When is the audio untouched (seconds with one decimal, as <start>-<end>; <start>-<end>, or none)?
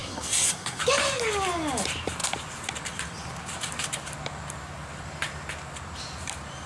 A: 0.8-6.7